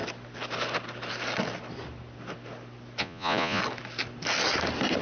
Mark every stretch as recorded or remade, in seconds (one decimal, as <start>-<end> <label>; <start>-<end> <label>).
0.0-3.0 recorded; 3.0-3.6 remade; 3.6-5.0 recorded